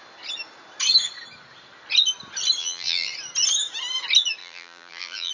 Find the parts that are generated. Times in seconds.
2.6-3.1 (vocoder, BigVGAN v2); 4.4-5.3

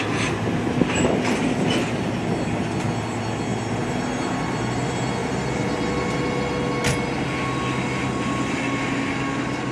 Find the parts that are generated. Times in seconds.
none

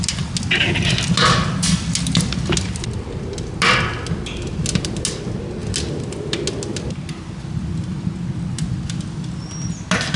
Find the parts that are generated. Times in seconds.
none

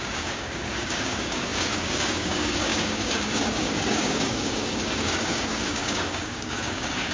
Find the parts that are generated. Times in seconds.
0.0-7.1 (codec, DAC)

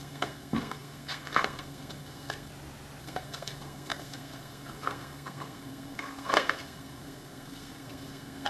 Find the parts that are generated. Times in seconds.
0.0-2.5 (codec, SNAC); 3.0-8.5

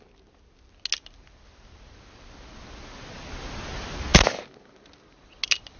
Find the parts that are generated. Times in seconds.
none

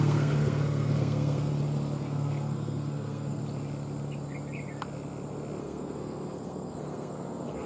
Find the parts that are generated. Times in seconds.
0.0-1.5 (codec, SNAC); 2.0-3.4; 5.6-7.7

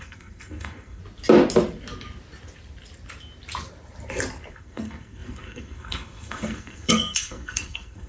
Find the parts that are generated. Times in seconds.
0.0-1.0 (codec, SNAC); 4.5-8.1